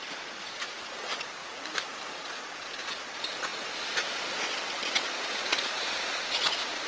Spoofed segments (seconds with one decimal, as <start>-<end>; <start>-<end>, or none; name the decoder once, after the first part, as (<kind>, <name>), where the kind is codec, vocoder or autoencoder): 0.0-1.4 (vocoder, Vocos); 2.1-6.9